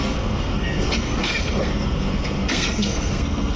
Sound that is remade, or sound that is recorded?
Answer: remade